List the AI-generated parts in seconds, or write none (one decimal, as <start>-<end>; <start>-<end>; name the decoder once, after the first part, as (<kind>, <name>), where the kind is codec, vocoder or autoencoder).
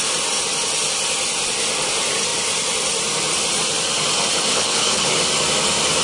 4.5-5.2 (codec, HILCodec)